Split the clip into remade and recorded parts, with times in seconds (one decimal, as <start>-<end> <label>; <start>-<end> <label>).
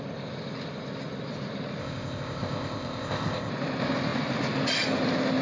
0.0-1.8 recorded; 1.8-3.5 remade; 3.5-5.4 recorded